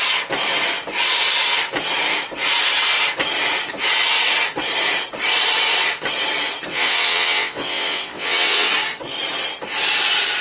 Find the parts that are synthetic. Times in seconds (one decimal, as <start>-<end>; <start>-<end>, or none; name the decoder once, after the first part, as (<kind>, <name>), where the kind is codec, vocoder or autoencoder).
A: 6.7-8.7 (vocoder, WaveNeXt)